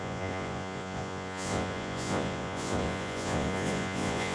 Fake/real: fake